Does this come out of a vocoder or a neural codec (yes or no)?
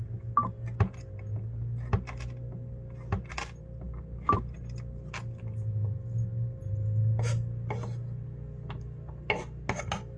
no